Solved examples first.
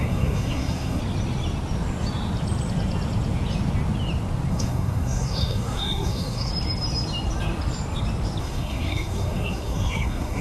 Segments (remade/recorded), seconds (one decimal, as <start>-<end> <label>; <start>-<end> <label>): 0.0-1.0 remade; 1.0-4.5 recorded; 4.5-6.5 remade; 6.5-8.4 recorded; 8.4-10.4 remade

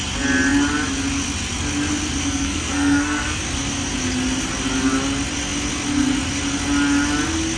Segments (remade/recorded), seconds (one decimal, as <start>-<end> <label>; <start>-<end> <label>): 0.0-2.2 recorded; 2.2-3.4 remade; 3.4-7.6 recorded

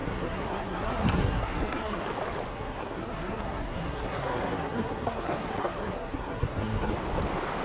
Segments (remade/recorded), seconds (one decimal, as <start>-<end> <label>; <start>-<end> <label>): 0.0-2.0 remade; 2.0-2.5 recorded; 2.5-6.9 remade; 6.9-7.6 recorded

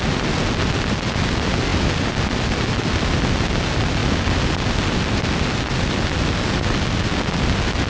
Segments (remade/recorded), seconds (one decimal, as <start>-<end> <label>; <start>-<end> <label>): 0.0-7.9 recorded

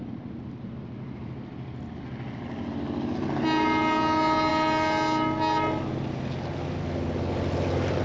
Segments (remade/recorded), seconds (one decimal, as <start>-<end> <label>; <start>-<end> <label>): 0.0-8.0 recorded